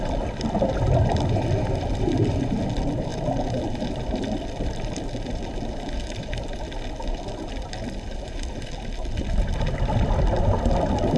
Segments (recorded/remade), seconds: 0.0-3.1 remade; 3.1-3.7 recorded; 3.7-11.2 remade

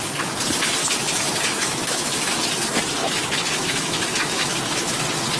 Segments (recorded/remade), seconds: 0.0-0.8 recorded; 0.8-2.5 remade; 2.5-3.0 recorded; 3.0-5.0 remade; 5.0-5.4 recorded

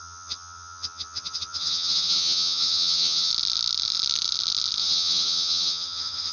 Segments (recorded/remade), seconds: 0.0-3.3 remade; 3.3-4.8 recorded; 4.8-6.3 remade

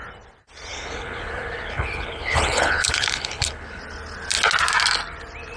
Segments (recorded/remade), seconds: 0.0-0.7 recorded; 0.7-3.8 remade; 3.8-5.6 recorded

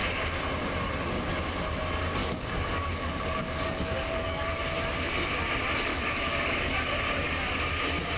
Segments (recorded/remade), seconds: 0.0-2.2 recorded; 2.2-4.5 remade; 4.5-5.9 recorded; 5.9-6.8 remade; 6.8-8.2 recorded

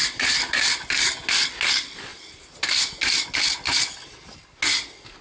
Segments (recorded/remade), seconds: 0.0-5.2 recorded

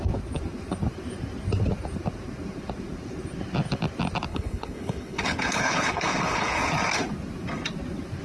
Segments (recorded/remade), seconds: 0.0-4.3 recorded; 4.3-6.7 remade; 6.7-8.2 recorded

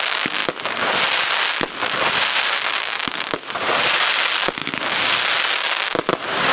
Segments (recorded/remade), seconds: 0.0-6.5 recorded